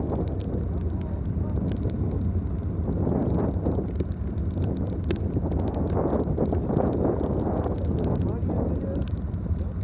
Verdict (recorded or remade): recorded